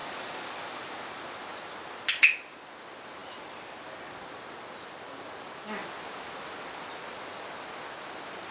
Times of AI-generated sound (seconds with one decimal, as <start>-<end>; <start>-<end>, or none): 0.0-0.9; 3.2-3.8